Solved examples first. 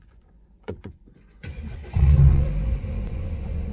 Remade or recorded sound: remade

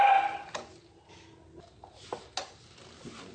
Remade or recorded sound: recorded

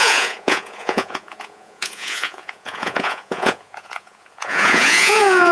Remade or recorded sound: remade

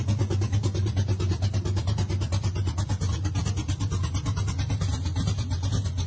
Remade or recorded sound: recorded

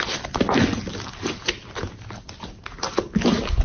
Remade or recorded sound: recorded